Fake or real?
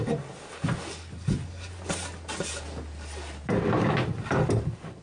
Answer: real